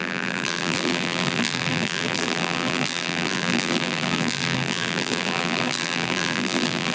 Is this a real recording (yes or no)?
no